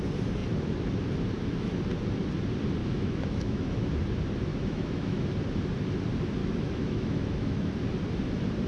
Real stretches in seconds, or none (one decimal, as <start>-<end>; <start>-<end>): 0.0-2.8; 3.9-4.5; 5.2-6.4; 7.7-8.7